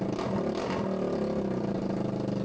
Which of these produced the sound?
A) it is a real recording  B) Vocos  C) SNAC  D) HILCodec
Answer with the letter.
A